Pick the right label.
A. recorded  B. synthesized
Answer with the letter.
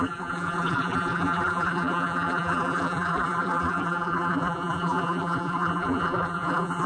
B